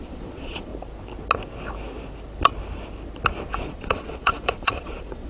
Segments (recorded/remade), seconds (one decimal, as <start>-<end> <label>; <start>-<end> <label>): 0.0-0.7 remade; 0.7-3.5 recorded; 3.5-5.3 remade